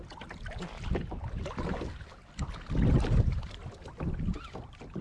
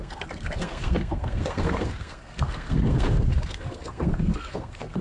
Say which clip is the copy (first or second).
second